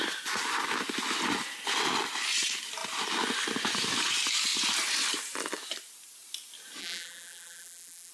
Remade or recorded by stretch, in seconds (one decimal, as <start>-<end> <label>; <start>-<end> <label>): 0.0-6.8 recorded; 6.8-8.1 remade